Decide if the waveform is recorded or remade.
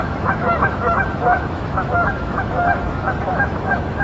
remade